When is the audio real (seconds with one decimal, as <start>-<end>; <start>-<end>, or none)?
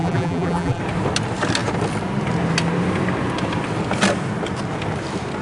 0.8-5.4